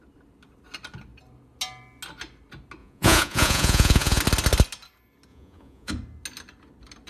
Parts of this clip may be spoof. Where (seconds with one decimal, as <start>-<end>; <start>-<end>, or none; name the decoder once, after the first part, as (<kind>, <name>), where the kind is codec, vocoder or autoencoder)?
2.8-4.2 (vocoder, Vocos); 5.3-5.9